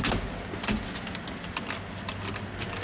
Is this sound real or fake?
real